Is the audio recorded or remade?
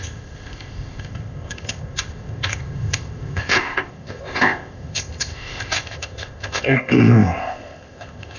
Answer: remade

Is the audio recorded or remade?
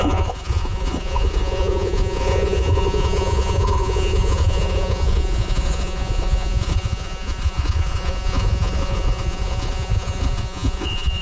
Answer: remade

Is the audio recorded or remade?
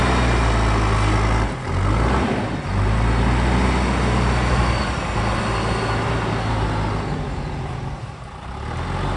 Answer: recorded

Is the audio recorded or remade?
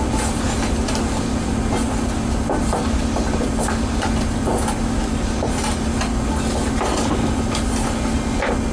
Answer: recorded